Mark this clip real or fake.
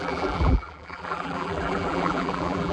fake